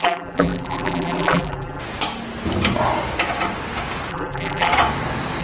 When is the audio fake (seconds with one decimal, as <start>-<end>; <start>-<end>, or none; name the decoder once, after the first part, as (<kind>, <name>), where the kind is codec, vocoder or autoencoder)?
0.0-1.8 (vocoder, BigVGAN v2); 4.1-4.7